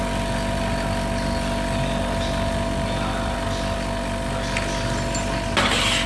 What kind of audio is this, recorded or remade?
recorded